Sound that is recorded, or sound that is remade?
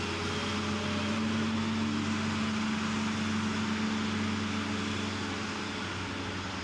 recorded